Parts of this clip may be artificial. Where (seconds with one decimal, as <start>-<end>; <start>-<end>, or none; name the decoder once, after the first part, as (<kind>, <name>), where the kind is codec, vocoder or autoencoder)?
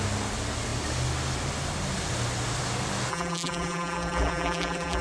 3.1-5.0 (vocoder, BigVGAN v2)